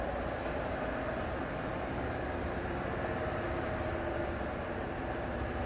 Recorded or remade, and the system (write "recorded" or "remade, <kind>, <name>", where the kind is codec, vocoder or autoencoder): recorded